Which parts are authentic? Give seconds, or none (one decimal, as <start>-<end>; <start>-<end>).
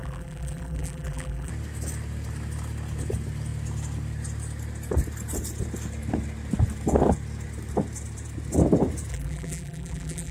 1.5-9.1